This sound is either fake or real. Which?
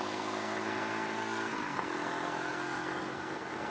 fake